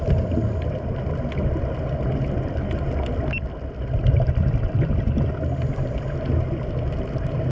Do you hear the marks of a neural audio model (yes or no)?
no